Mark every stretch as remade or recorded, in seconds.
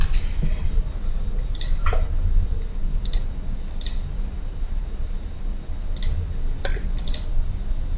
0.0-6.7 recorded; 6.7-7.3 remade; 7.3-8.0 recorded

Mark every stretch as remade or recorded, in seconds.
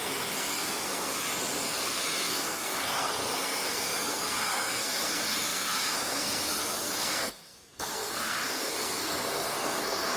0.0-1.1 remade; 1.1-1.6 recorded; 1.6-10.2 remade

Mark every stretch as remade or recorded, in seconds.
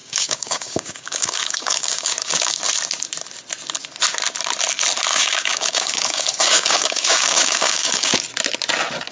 0.0-2.6 remade; 2.6-5.1 recorded; 5.1-8.2 remade; 8.2-9.1 recorded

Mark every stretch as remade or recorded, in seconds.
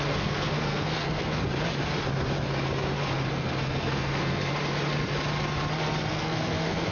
0.0-1.4 remade; 1.4-3.3 recorded; 3.3-4.5 remade; 4.5-6.1 recorded; 6.1-6.9 remade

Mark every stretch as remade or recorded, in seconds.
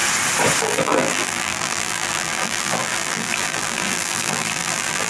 0.0-0.6 recorded; 0.6-5.1 remade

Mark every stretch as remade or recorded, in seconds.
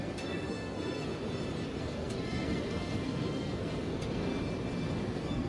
0.0-1.1 remade; 1.1-1.8 recorded; 1.8-4.3 remade; 4.3-5.1 recorded; 5.1-5.5 remade